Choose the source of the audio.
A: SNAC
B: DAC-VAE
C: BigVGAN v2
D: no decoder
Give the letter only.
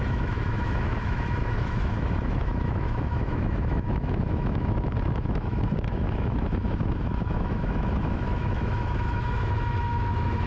B